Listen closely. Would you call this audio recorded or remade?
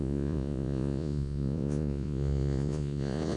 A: remade